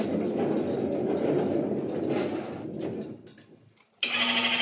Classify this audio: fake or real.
real